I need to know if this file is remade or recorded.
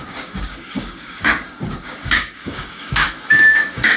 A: remade